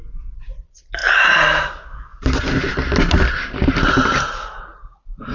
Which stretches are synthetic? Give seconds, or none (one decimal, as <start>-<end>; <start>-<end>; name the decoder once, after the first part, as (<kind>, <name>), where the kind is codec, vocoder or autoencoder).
none